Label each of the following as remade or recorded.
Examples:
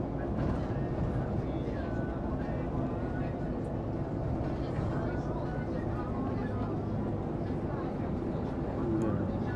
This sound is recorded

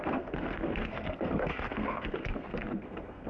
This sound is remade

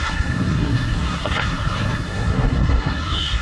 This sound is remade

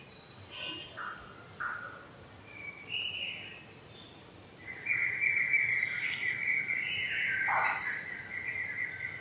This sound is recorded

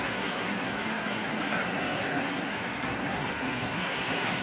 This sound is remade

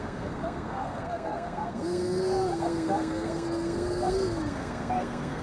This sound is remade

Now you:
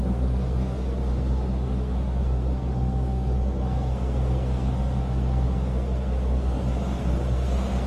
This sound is remade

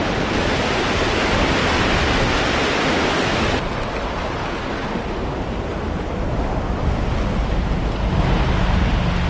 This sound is recorded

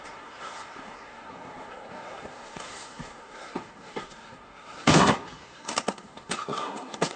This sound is remade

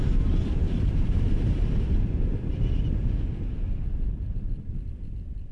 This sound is recorded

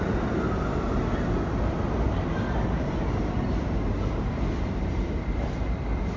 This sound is recorded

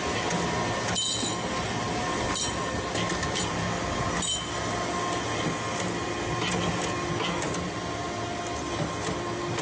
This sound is recorded